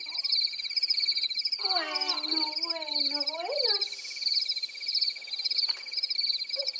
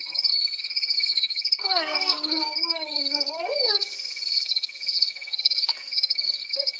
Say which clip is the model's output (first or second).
second